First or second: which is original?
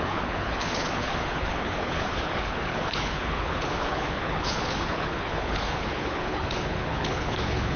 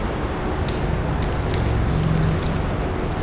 second